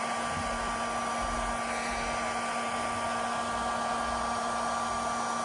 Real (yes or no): yes